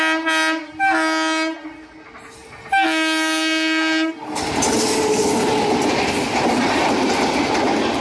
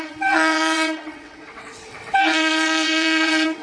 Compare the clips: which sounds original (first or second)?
first